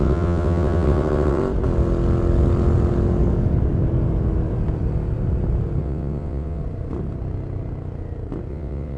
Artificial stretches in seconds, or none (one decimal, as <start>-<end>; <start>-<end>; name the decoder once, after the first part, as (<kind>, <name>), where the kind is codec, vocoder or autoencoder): 0.0-1.4 (vocoder, WaveNeXt); 5.8-6.6; 8.5-9.0